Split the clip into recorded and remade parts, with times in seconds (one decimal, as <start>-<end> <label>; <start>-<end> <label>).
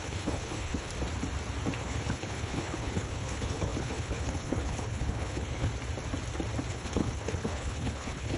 0.0-0.9 remade; 0.9-1.8 recorded; 1.8-5.7 remade; 5.7-6.7 recorded; 6.7-8.4 remade